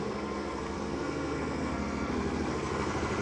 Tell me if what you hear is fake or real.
fake